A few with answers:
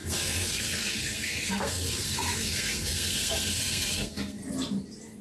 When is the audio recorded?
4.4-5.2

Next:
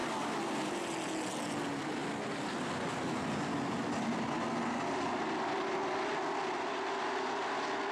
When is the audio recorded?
0.0-7.9

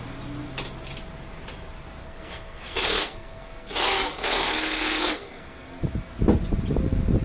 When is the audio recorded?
0.0-2.0; 5.8-7.2

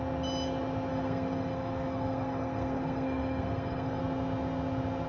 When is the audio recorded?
0.0-0.9; 4.0-5.1